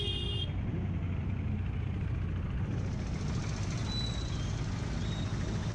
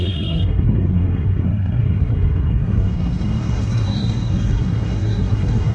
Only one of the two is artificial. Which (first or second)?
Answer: second